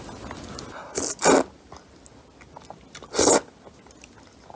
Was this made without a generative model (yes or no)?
yes